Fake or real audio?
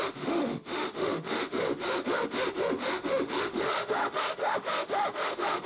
fake